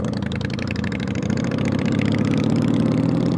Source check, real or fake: real